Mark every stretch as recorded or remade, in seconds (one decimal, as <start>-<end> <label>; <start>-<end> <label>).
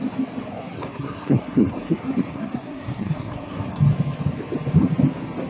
0.0-0.5 recorded; 0.5-3.8 remade; 3.8-5.5 recorded